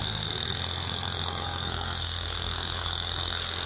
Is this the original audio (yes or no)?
no